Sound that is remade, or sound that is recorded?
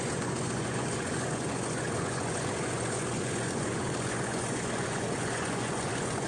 remade